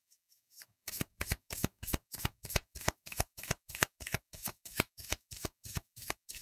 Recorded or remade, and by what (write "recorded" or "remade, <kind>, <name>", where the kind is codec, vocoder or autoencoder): remade, codec, DAC